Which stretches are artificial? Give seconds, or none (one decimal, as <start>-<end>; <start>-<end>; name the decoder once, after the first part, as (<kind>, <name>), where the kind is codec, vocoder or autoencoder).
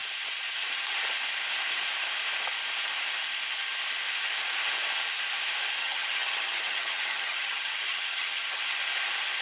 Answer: 5.8-8.6 (vocoder, HiFi-GAN)